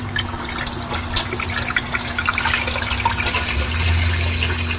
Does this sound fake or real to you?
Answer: real